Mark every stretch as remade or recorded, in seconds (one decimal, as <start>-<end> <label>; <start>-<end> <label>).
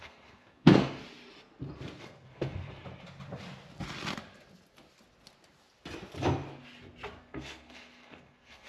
0.0-1.0 remade; 1.0-2.0 recorded; 2.0-2.8 remade; 2.8-7.2 recorded; 7.2-8.7 remade